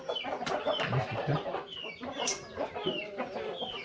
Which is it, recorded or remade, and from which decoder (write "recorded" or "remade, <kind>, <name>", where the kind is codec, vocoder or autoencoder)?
recorded